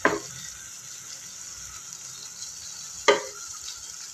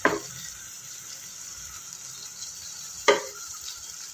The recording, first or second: first